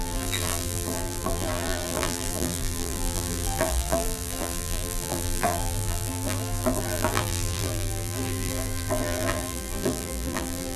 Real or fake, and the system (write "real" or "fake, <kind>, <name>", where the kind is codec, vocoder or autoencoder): fake, vocoder, BigVGAN v2